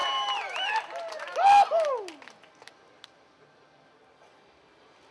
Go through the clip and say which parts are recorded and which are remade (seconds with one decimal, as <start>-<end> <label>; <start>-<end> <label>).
0.0-5.1 recorded